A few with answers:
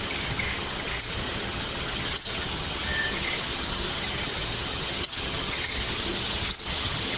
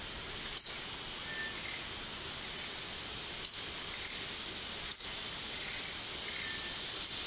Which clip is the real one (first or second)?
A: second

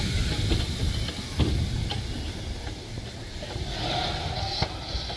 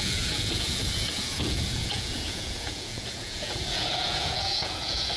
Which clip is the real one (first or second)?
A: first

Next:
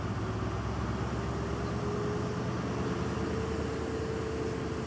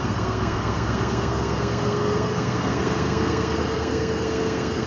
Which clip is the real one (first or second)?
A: first